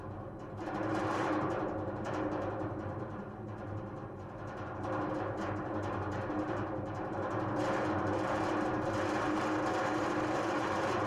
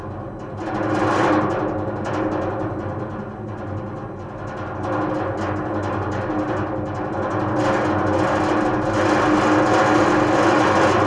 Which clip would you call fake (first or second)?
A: first